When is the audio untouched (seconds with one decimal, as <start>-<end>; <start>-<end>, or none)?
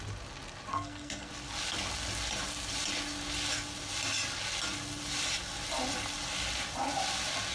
0.0-0.7; 1.3-7.5